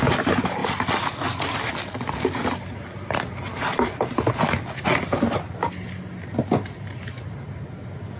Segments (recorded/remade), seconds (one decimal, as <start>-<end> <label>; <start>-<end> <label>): 0.0-8.2 recorded